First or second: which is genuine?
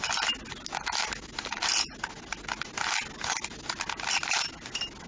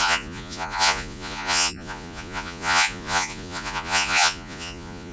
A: first